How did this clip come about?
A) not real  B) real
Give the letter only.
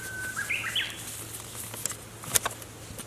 B